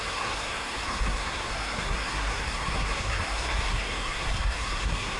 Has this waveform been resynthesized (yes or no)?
yes